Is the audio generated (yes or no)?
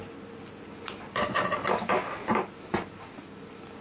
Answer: no